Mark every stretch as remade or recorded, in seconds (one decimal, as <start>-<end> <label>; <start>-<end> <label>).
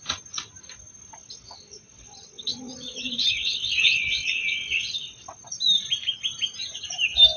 0.0-1.2 recorded; 1.2-5.4 remade; 5.4-7.4 recorded